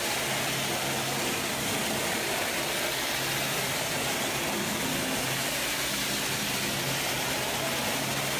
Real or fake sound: real